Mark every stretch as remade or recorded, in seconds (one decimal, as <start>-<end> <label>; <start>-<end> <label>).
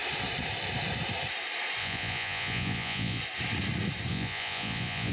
0.0-1.8 recorded; 1.8-3.2 remade; 3.2-4.1 recorded; 4.1-5.1 remade